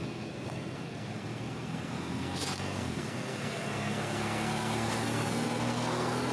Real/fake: fake